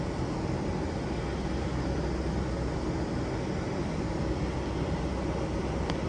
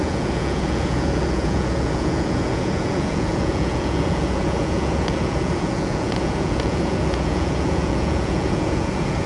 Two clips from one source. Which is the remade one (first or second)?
second